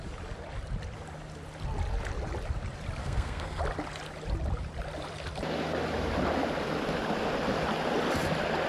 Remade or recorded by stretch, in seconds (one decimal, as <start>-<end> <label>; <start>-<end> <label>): 0.0-3.0 recorded; 3.0-3.6 remade; 3.6-8.7 recorded